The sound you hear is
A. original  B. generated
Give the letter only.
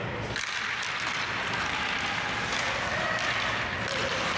A